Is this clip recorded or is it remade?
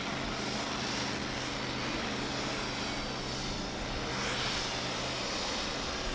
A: recorded